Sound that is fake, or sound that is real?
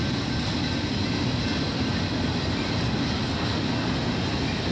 real